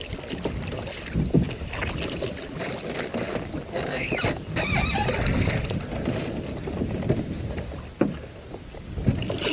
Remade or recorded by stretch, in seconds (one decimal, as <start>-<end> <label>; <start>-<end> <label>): 0.0-9.5 recorded